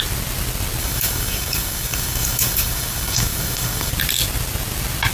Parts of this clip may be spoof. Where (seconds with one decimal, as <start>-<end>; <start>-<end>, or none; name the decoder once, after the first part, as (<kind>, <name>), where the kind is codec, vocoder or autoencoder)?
0.8-3.9 (codec, DAC)

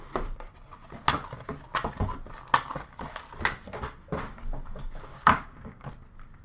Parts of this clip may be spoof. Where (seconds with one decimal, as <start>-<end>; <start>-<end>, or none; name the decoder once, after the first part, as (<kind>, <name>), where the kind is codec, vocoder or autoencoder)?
5.1-5.9 (codec, DAC)

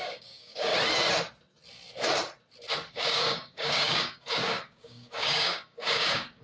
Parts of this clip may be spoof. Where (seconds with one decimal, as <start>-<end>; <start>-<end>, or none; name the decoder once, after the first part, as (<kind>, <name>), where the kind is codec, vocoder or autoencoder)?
0.0-0.7 (codec, DAC); 2.9-6.4

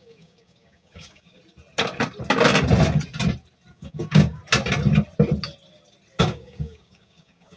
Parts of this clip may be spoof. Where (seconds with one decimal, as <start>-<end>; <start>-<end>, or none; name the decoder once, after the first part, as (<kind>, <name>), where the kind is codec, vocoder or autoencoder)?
0.0-1.4 (codec, DAC); 3.7-4.4; 6.2-7.6

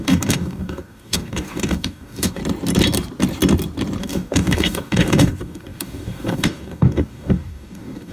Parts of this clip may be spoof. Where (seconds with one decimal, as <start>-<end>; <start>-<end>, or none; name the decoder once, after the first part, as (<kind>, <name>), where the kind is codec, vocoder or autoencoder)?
0.0-2.4 (codec, DAC); 4.0-8.1

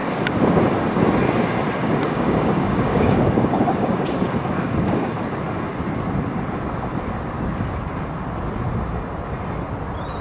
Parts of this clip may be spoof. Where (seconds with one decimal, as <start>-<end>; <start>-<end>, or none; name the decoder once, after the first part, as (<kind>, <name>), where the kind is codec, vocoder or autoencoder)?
1.8-5.1 (codec, DAC)

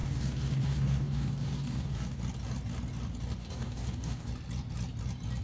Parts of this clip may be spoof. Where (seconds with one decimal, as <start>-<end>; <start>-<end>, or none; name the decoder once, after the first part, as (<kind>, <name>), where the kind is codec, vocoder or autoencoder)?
0.0-2.2 (codec, DAC); 3.4-4.3